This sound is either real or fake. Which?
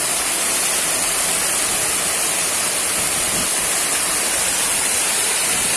real